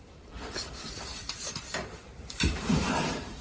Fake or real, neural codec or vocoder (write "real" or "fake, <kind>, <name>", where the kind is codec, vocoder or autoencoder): fake, vocoder, BigVGAN v2